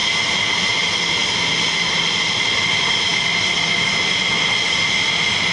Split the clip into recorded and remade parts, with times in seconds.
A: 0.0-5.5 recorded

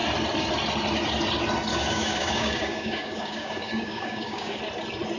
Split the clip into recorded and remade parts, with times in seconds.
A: 0.0-1.7 recorded; 1.7-4.6 remade; 4.6-5.2 recorded

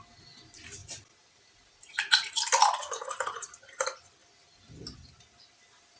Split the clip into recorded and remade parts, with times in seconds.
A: 0.0-6.0 recorded

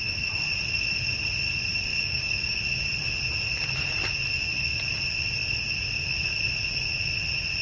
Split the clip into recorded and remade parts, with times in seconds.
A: 0.0-1.9 recorded; 1.9-2.6 remade; 2.6-7.6 recorded

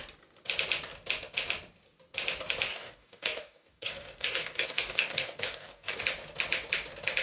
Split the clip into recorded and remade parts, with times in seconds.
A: 0.0-2.7 recorded; 2.7-6.0 remade; 6.0-7.2 recorded

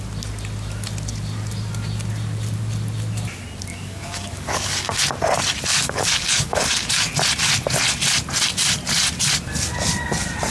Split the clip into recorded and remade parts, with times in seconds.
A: 0.0-3.7 recorded; 3.7-5.0 remade; 5.0-5.7 recorded; 5.7-7.1 remade; 7.1-10.5 recorded

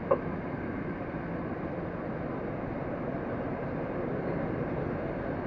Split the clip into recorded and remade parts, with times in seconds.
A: 0.0-5.5 recorded

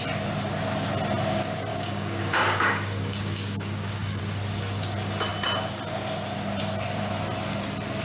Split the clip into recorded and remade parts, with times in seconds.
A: 0.0-1.7 recorded; 1.7-4.2 remade; 4.2-8.0 recorded